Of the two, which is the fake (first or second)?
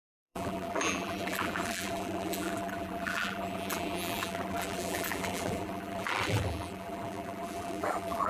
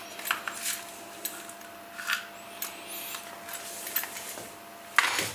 first